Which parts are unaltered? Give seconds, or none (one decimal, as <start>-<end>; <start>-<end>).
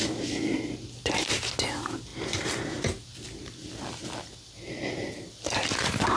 0.0-6.2